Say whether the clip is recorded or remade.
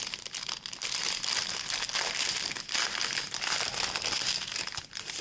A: recorded